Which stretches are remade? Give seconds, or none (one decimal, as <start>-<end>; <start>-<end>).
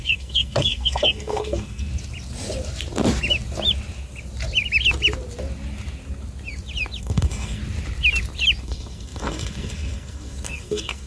0.0-1.9; 7.0-7.6; 8.6-11.1